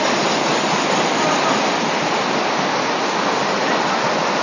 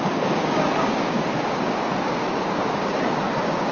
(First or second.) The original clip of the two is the first